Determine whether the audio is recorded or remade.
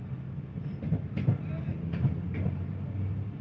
recorded